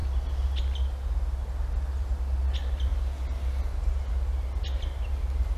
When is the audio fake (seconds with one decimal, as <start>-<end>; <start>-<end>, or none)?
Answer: none